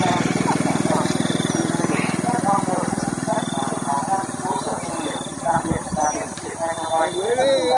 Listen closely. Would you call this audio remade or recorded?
recorded